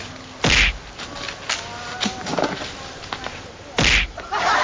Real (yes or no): yes